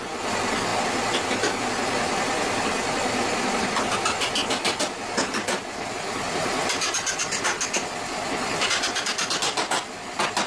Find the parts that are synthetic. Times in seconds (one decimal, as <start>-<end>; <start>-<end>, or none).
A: none